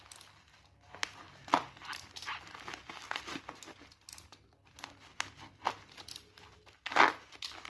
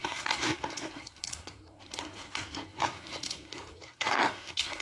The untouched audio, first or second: first